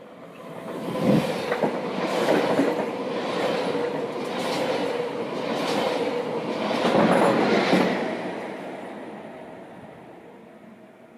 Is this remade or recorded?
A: recorded